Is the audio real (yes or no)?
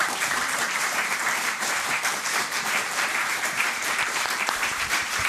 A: no